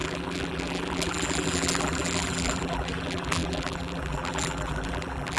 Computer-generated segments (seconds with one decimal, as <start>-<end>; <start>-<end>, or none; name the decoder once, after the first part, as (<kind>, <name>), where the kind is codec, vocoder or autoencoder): 0.0-5.4 (vocoder, BigVGAN v2)